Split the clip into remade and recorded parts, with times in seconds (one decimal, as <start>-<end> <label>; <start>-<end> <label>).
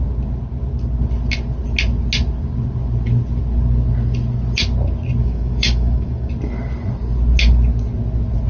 0.0-5.2 recorded; 5.2-6.3 remade; 6.3-8.5 recorded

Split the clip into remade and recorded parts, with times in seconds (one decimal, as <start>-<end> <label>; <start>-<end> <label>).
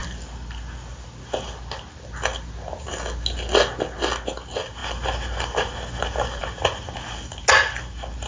0.0-8.3 recorded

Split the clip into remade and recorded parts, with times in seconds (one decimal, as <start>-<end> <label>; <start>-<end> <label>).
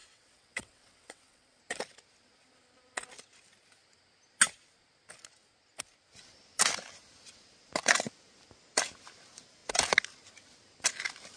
0.0-1.6 remade; 1.6-11.4 recorded